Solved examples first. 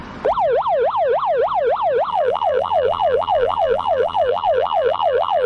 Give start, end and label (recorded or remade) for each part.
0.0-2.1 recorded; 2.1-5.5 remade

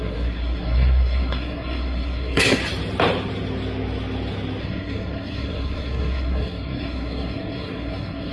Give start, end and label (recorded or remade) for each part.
0.0-2.6 remade; 2.6-4.6 recorded; 4.6-8.3 remade